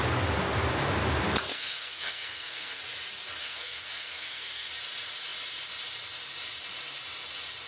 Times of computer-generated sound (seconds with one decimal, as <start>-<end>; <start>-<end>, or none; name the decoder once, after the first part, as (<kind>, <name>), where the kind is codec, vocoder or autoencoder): 1.5-2.8 (codec, SNAC); 3.4-4.7